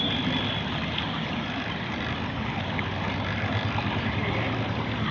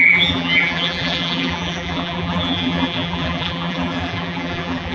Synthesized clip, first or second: second